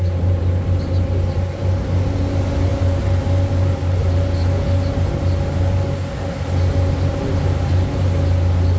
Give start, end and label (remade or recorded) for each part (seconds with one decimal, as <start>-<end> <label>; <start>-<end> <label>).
0.0-8.8 recorded

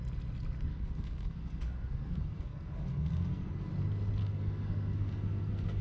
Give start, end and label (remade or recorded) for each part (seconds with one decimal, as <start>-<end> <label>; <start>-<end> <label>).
0.0-0.7 recorded; 0.7-3.5 remade; 3.5-4.2 recorded; 4.2-5.8 remade

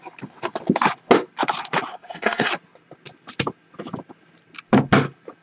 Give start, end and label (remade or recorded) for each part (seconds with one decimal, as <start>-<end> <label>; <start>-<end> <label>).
0.0-1.9 recorded; 1.9-2.5 remade; 2.5-5.4 recorded

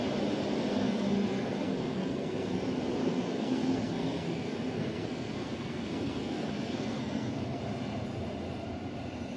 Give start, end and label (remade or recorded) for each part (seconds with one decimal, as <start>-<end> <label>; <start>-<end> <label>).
0.0-0.7 recorded; 0.7-2.6 remade; 2.6-3.0 recorded; 3.0-7.6 remade; 7.6-9.4 recorded